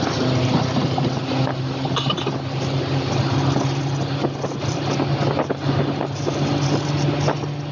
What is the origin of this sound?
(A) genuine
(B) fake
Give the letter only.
A